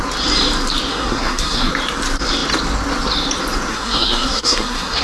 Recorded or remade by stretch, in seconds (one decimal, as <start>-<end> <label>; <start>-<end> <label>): 0.0-0.9 recorded; 0.9-1.7 remade; 1.7-3.7 recorded; 3.7-5.0 remade